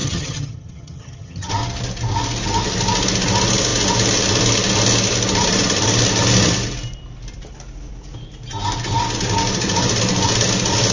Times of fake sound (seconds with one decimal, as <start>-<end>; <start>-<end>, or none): 0.0-1.5